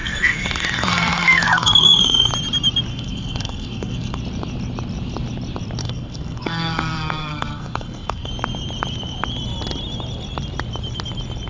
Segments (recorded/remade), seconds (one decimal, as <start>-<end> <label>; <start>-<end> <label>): 0.0-2.3 remade; 2.3-2.9 recorded; 2.9-4.2 remade; 4.2-5.8 recorded; 5.8-8.3 remade; 8.3-11.5 recorded